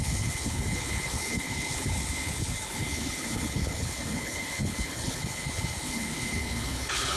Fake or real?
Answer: fake